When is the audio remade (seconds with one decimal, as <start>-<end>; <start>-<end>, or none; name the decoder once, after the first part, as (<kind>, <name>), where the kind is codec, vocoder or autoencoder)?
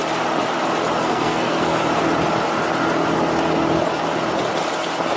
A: 1.0-1.8 (codec, SNAC)